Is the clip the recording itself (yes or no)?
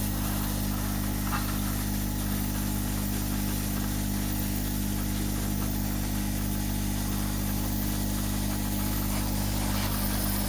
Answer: yes